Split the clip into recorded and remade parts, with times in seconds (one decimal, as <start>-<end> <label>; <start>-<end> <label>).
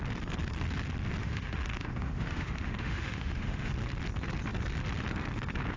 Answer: 0.0-1.2 recorded; 1.2-3.7 remade; 3.7-5.8 recorded